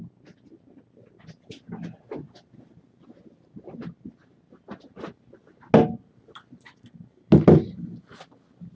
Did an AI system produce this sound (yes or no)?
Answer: no